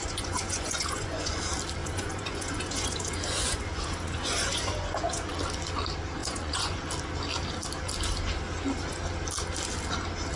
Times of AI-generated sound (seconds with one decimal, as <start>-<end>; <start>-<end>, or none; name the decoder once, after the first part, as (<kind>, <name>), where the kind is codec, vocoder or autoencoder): 0.0-1.4 (vocoder, Vocos); 1.8-5.3; 6.2-6.8

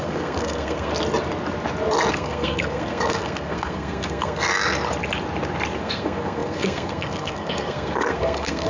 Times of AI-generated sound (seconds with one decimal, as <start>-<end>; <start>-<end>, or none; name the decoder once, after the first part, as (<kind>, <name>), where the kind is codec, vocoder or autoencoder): 0.0-0.9 (codec, SNAC); 2.1-4.5; 5.8-8.7

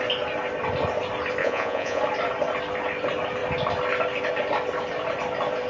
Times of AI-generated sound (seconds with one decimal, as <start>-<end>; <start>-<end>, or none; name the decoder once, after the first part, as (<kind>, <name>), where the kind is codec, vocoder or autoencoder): 1.4-2.0 (vocoder, Vocos)

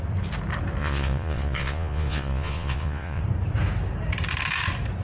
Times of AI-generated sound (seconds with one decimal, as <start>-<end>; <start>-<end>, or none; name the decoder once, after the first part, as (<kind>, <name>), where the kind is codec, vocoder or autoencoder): 0.8-3.2 (vocoder, Vocos)

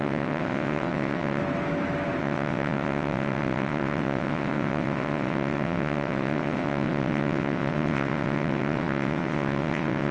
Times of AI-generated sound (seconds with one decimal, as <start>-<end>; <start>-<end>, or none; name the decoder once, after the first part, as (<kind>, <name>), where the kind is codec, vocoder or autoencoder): 0.0-1.4 (vocoder, WaveNeXt); 2.2-10.1

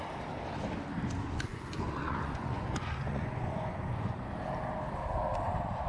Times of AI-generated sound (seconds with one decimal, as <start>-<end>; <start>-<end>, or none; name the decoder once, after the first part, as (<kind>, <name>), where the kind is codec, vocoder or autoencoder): 1.5-4.3 (vocoder, Vocos)